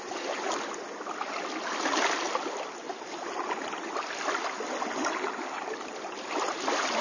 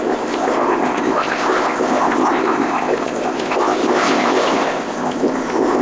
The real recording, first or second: first